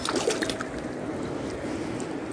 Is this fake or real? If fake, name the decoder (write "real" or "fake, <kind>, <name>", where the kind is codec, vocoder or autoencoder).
real